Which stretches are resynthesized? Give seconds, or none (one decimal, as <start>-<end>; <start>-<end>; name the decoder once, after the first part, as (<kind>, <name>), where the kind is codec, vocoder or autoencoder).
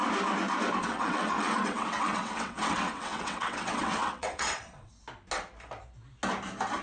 0.8-4.9 (vocoder, WaveNeXt)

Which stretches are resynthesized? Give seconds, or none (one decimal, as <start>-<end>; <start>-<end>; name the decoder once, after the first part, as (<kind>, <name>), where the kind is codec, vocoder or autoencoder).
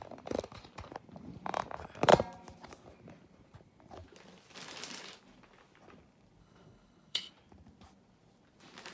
6.4-7.3 (codec, HILCodec)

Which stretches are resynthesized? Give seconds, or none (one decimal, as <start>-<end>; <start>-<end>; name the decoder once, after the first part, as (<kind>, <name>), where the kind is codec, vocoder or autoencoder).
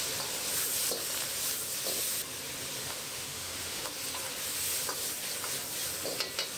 2.8-3.9 (autoencoder, DAC-VAE)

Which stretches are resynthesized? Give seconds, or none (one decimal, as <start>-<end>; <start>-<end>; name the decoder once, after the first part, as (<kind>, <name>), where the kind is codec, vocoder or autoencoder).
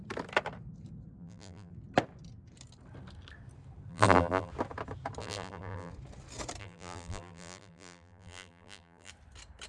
1.2-1.7 (vocoder, BigVGAN v2); 3.9-4.5; 5.2-5.9; 6.6-9.1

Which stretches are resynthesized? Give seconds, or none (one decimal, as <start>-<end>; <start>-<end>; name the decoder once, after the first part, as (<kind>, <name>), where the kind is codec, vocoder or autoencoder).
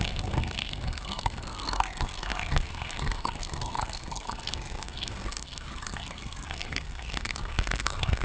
0.0-8.2 (codec, SNAC)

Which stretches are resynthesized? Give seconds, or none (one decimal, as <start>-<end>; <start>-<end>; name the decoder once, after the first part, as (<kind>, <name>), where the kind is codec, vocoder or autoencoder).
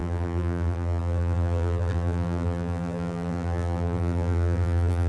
0.0-5.1 (vocoder, BigVGAN v2)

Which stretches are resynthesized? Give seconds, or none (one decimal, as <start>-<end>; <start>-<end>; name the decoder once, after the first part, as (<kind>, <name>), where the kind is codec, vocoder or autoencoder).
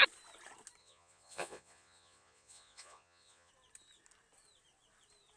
0.8-3.5 (vocoder, Vocos)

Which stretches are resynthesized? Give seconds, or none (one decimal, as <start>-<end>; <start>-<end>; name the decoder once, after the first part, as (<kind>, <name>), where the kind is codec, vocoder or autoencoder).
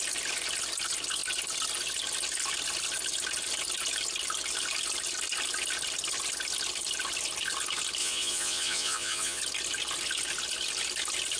8.0-9.4 (vocoder, Vocos)